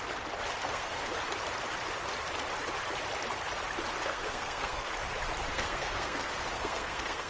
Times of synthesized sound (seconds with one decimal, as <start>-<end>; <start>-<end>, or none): 0.6-1.1; 4.1-4.9; 5.5-7.3